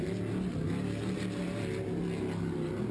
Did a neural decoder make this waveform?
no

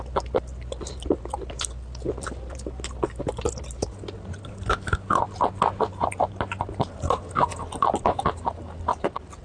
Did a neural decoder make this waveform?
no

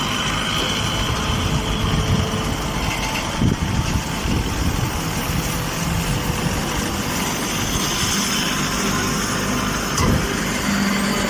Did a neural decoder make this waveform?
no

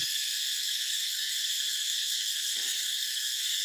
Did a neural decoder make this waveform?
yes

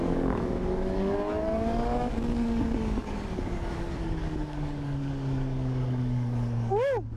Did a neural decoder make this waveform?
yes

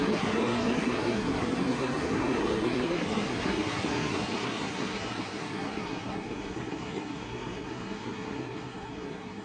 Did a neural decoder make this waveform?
yes